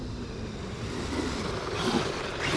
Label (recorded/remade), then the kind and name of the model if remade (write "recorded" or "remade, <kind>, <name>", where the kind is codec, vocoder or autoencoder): recorded